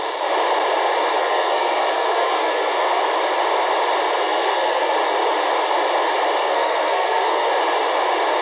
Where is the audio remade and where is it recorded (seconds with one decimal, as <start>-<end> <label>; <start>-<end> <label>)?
0.0-1.2 recorded; 1.2-3.0 remade; 3.0-4.2 recorded; 4.2-4.9 remade; 4.9-6.4 recorded; 6.4-7.5 remade; 7.5-8.4 recorded